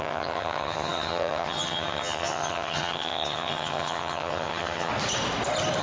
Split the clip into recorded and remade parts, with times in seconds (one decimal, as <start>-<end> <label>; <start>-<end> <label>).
0.0-4.9 remade; 4.9-5.8 recorded